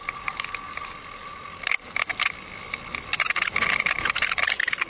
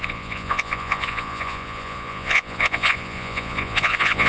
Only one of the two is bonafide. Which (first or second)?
first